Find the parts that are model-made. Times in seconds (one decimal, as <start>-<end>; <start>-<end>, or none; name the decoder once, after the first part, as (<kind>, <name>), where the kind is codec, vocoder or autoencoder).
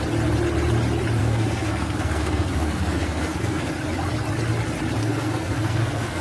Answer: 1.2-3.7 (codec, SNAC); 5.0-6.2